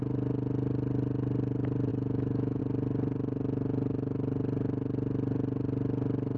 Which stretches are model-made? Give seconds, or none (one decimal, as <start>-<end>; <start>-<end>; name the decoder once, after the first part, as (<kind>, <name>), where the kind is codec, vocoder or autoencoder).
1.9-2.6 (autoencoder, DAC-VAE)